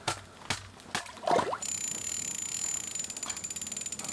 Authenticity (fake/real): real